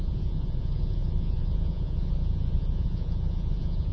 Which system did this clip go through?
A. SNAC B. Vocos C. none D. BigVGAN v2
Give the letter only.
B